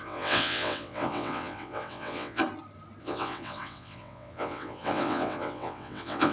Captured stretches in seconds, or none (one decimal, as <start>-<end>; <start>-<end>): 2.4-3.0